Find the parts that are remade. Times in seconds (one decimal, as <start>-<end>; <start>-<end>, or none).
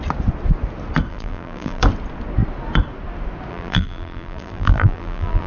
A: 1.1-1.8; 3.5-5.5